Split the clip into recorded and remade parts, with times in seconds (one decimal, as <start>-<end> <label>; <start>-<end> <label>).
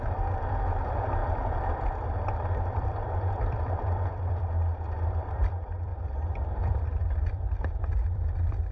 0.0-8.7 remade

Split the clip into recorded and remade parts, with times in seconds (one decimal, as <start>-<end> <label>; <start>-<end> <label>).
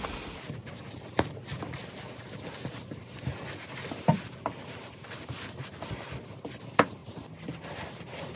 0.0-7.0 recorded; 7.0-7.6 remade; 7.6-8.4 recorded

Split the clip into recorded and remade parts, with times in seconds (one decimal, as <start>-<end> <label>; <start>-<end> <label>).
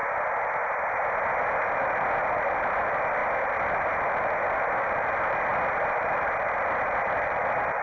0.0-5.5 recorded; 5.5-7.8 remade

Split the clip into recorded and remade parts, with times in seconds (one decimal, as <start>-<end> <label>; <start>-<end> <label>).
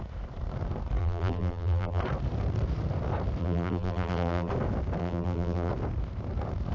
0.0-1.0 recorded; 1.0-2.0 remade; 2.0-3.4 recorded; 3.4-4.5 remade; 4.5-5.0 recorded; 5.0-5.7 remade; 5.7-6.7 recorded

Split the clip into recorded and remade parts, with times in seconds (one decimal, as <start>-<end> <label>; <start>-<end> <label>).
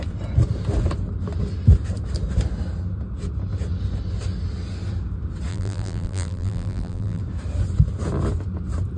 0.0-5.5 recorded; 5.5-7.2 remade; 7.2-9.0 recorded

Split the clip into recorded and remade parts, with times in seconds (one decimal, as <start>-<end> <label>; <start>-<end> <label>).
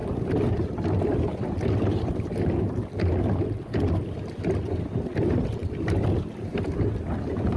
0.0-0.6 remade; 0.6-7.6 recorded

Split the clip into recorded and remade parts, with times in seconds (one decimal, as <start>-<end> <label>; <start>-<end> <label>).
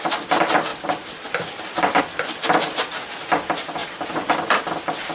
0.0-5.1 recorded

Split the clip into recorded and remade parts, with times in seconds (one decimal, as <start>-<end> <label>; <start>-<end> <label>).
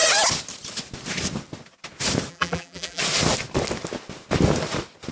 0.0-2.3 recorded; 2.3-3.0 remade; 3.0-5.1 recorded